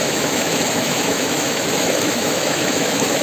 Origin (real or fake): fake